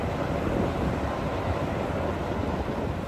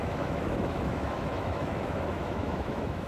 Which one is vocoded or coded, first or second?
second